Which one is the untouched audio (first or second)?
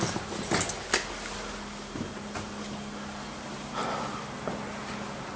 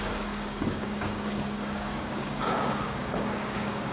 first